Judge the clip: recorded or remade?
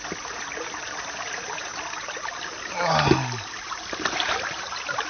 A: recorded